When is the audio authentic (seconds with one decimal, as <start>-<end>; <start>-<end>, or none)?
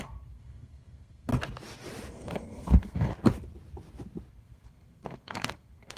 1.3-2.1; 3.1-4.3